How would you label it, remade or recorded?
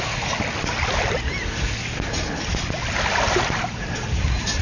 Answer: recorded